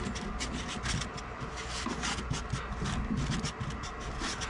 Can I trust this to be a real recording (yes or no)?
yes